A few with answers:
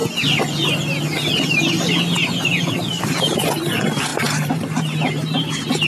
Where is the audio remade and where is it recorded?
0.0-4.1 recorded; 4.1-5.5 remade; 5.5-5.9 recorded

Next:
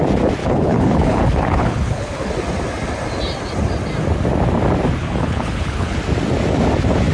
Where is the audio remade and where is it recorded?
0.0-0.4 recorded; 0.4-2.3 remade; 2.3-5.0 recorded; 5.0-6.0 remade; 6.0-7.1 recorded